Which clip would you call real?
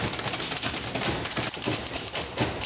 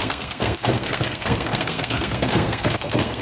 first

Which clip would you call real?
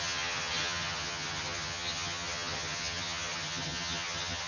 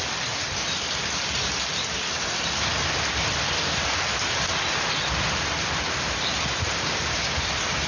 second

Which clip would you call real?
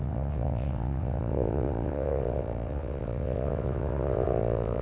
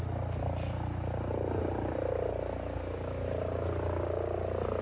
second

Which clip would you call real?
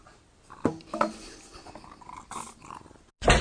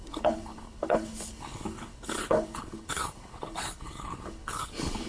first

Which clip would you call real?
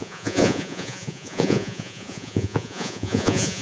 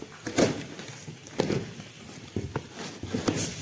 second